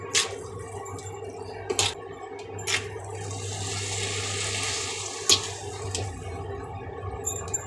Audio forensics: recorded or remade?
recorded